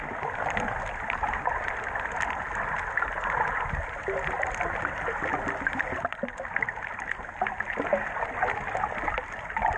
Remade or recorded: recorded